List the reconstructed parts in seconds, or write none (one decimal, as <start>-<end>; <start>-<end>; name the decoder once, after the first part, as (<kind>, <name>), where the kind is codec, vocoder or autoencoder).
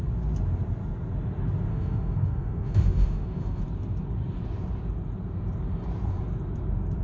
1.7-3.6 (autoencoder, DAC-VAE)